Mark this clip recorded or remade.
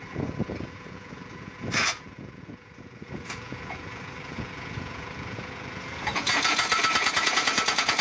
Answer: remade